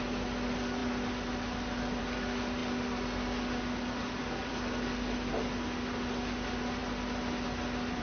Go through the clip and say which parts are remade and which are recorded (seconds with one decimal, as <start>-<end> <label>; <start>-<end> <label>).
0.0-8.0 recorded